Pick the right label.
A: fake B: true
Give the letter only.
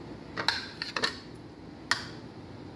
B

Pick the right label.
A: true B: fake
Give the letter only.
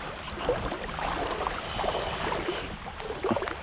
A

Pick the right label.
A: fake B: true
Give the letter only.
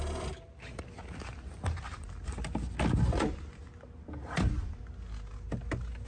B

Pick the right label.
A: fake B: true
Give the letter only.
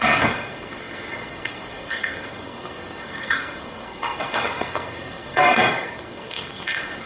A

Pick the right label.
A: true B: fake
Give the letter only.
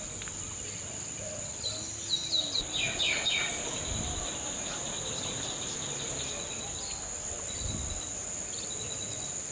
A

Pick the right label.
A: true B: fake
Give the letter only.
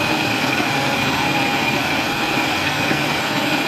B